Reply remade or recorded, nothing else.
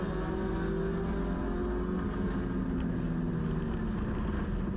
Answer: recorded